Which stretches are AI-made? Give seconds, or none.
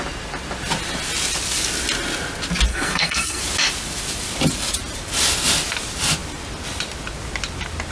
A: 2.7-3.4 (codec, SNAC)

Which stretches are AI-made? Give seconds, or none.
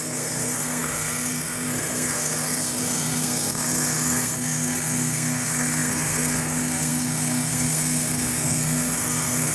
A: 0.0-9.5 (codec, SNAC)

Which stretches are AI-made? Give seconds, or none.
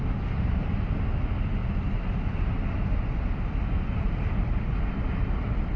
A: none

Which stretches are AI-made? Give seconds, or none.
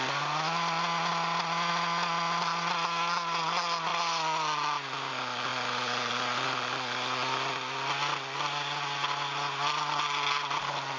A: none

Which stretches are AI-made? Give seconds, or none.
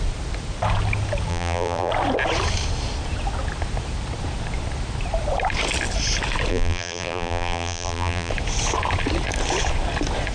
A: 1.3-1.9 (vocoder, BigVGAN v2); 6.5-8.3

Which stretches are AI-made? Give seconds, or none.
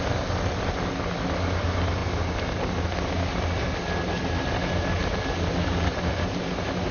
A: none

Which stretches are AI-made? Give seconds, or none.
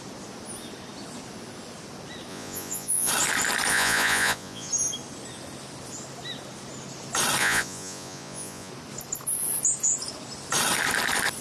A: 2.3-3.1 (vocoder, Vocos); 3.7-4.7; 7.4-8.7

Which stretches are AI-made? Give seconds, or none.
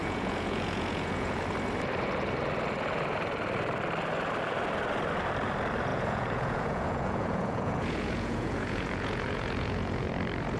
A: 0.0-1.4 (vocoder, Vocos); 5.9-10.1